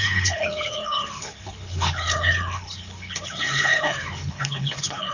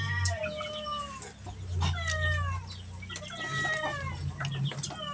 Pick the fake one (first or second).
first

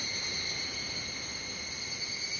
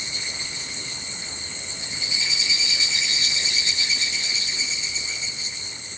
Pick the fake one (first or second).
second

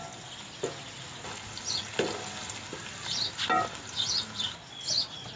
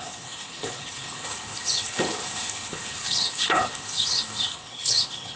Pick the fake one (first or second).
second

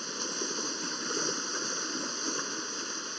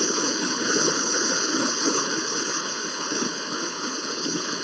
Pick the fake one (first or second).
second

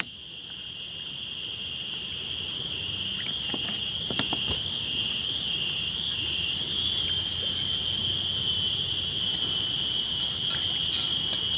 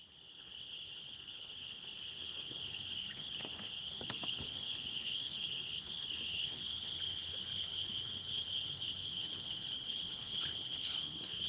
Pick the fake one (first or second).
second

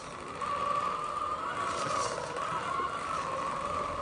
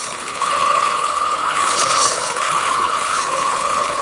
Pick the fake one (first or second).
second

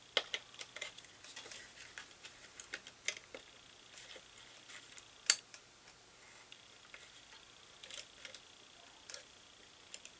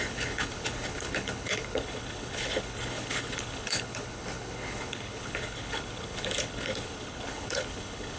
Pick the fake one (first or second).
second